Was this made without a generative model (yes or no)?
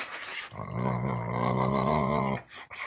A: yes